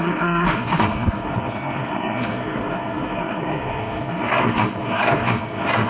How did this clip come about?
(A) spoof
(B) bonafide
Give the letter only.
A